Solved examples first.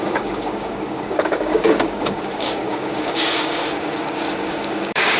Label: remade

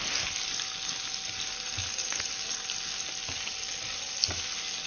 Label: recorded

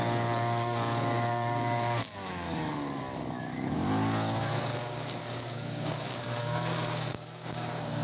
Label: remade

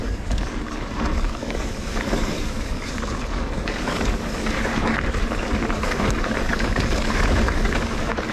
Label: remade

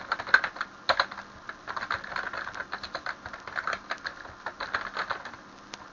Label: recorded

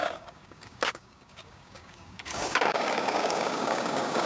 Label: remade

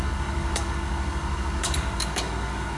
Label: remade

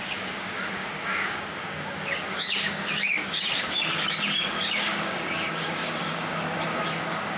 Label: remade